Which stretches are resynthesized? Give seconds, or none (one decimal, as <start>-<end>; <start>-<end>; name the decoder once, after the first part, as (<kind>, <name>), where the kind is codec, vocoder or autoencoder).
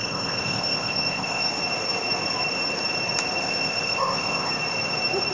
0.0-1.5 (codec, ZipCodec); 3.4-4.5